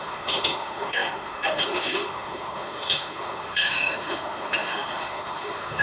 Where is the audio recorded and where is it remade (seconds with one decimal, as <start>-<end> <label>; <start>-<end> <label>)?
0.0-5.8 remade